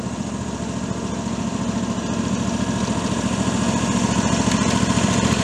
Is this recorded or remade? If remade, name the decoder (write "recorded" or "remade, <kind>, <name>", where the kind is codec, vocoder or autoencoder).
recorded